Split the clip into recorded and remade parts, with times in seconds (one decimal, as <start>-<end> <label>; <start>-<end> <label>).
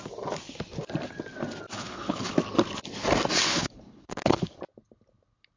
0.0-1.7 recorded; 1.7-2.3 remade; 2.3-3.4 recorded; 3.4-4.6 remade; 4.6-5.6 recorded